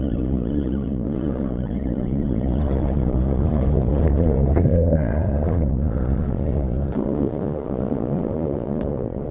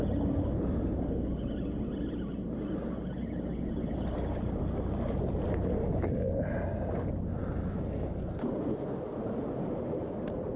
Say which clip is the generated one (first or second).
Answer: first